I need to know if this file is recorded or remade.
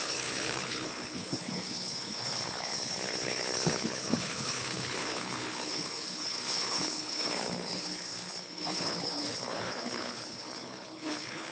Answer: remade